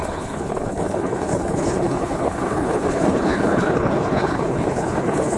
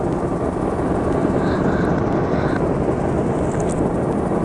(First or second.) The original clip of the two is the second